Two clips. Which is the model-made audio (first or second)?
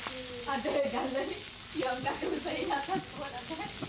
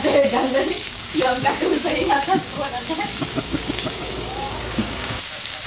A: second